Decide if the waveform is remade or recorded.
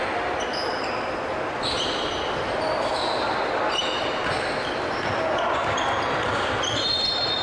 recorded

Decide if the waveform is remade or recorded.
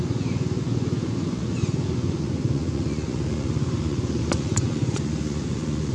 remade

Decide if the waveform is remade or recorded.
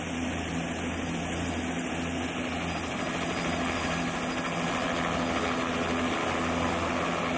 recorded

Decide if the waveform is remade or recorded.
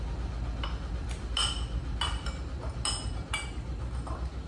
recorded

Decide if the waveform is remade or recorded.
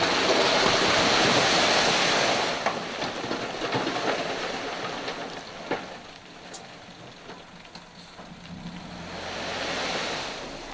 recorded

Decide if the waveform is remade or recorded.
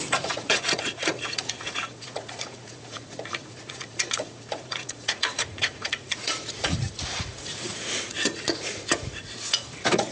remade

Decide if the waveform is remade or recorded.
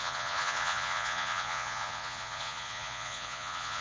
remade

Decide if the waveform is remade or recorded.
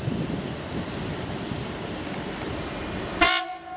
recorded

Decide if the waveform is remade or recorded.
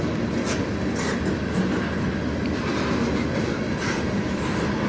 recorded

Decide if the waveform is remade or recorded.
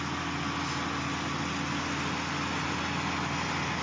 recorded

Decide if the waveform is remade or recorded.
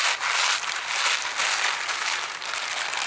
recorded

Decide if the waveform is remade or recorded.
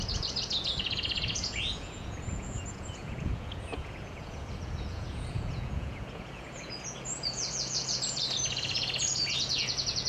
remade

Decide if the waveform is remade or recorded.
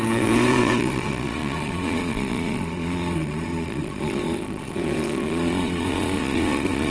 remade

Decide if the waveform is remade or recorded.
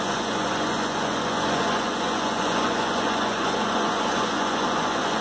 remade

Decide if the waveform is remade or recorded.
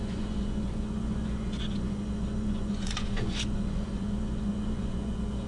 remade